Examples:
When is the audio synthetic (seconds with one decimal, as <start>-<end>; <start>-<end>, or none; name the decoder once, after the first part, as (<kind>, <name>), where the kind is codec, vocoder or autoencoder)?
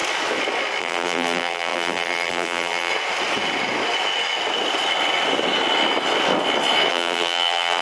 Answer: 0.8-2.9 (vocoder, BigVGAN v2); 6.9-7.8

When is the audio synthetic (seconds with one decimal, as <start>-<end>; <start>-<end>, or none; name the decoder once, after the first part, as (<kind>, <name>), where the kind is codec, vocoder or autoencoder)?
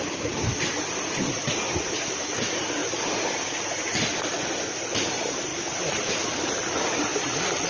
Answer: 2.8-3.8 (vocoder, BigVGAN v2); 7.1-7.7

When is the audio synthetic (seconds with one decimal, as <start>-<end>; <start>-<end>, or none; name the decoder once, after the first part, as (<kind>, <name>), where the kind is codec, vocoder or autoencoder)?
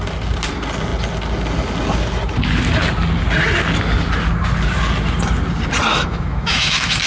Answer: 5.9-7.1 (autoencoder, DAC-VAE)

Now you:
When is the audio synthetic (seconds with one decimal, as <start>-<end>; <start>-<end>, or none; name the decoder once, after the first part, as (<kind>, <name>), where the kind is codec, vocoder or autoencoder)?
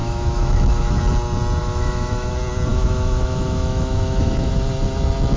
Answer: 0.0-1.0 (autoencoder, DAC-VAE); 1.6-2.3; 2.7-4.5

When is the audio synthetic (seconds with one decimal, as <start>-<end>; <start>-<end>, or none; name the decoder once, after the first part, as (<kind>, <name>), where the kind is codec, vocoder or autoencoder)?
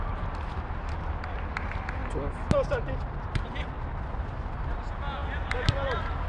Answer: none